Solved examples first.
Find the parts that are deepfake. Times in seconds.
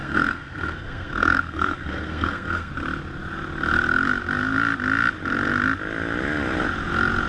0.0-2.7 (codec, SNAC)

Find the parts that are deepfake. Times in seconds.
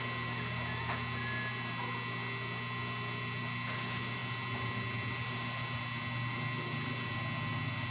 none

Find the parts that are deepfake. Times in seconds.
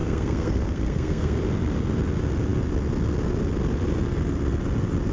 0.0-1.4 (codec, SNAC)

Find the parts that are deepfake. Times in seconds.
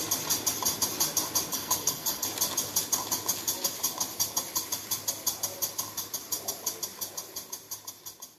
1.5-2.3 (codec, SNAC)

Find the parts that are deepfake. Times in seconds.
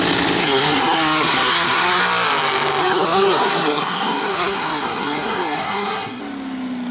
0.4-2.0 (codec, SNAC); 2.8-6.2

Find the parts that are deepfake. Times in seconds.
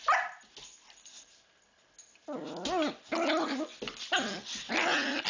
none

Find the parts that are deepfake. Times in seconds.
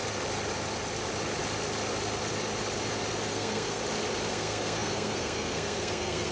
3.3-3.8 (codec, SNAC); 4.3-6.3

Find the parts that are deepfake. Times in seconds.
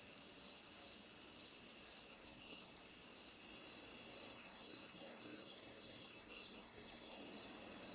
2.1-2.8 (codec, SNAC); 4.3-7.2